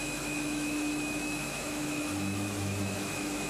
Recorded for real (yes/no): no